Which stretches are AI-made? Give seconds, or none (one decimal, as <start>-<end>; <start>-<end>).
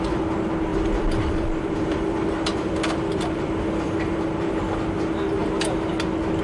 0.7-4.5